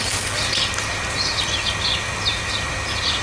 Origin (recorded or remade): recorded